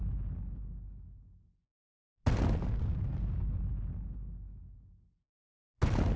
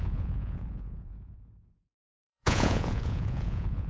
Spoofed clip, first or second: second